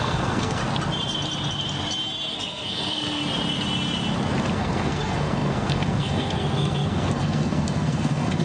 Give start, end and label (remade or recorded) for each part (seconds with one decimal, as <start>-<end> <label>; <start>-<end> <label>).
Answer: 0.0-0.6 remade; 0.6-2.3 recorded; 2.3-3.2 remade; 3.2-4.5 recorded; 4.5-8.4 remade

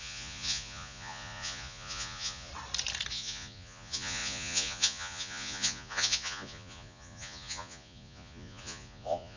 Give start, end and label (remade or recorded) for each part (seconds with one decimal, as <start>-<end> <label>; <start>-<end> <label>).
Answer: 0.0-2.5 remade; 2.5-3.1 recorded; 3.1-9.4 remade

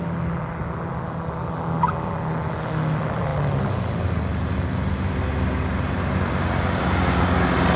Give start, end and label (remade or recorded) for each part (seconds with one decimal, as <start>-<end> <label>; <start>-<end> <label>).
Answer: 0.0-7.8 recorded